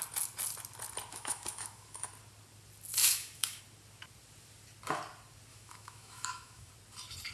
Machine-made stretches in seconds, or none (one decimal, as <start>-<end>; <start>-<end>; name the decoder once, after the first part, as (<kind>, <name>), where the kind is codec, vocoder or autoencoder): 1.1-2.1 (autoencoder, DAC-VAE); 3.0-3.6; 5.5-6.7